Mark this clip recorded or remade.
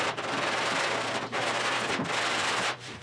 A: remade